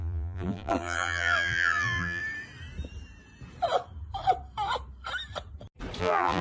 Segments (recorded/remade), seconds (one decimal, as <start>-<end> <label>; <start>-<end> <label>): 0.0-2.2 remade; 2.2-6.0 recorded; 6.0-6.4 remade